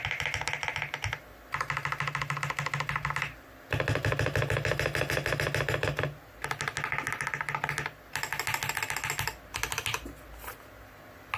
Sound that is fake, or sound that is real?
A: real